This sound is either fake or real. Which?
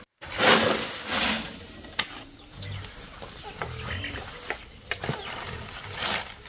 real